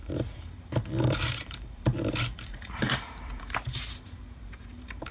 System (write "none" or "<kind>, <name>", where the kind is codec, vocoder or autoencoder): vocoder, BigVGAN v2